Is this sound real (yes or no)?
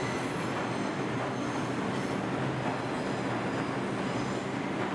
yes